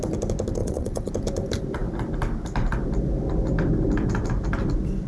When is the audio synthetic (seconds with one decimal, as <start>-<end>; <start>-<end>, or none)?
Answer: 0.6-1.1